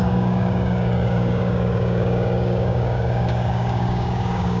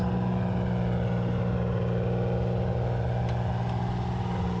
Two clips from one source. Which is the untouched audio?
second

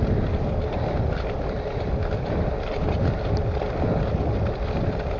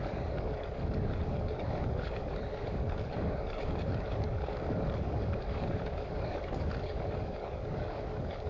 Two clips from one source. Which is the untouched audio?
first